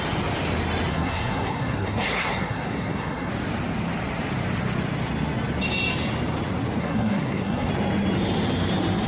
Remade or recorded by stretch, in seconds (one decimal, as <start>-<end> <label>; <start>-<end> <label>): 0.0-0.9 recorded; 0.9-3.3 remade; 3.3-6.8 recorded; 6.8-7.7 remade; 7.7-9.1 recorded